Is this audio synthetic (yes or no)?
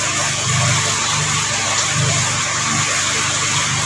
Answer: no